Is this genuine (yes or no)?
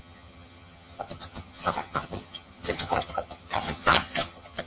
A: no